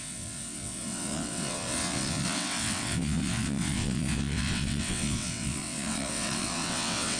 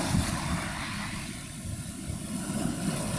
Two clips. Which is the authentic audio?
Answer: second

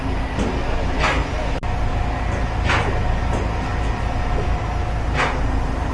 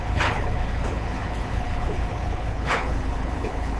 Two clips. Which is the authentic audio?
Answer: first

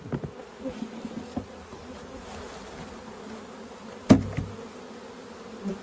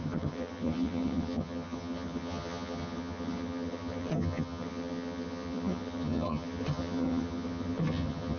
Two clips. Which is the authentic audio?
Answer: first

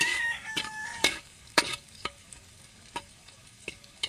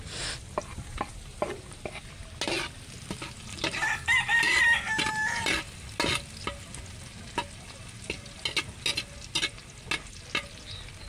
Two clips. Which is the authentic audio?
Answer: second